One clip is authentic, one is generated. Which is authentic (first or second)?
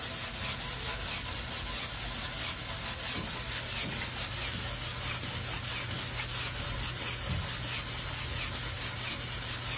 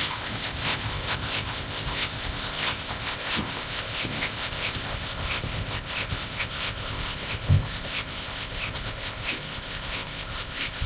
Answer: first